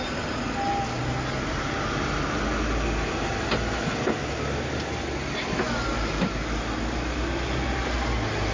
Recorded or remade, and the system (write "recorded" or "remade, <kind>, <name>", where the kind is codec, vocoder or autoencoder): recorded